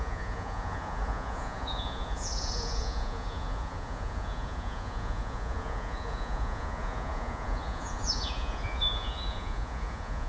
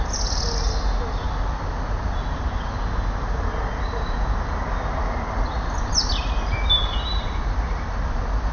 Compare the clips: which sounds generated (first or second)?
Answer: first